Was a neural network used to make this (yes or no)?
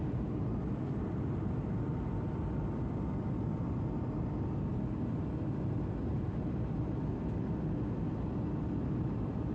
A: no